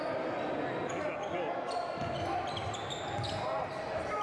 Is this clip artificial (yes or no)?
no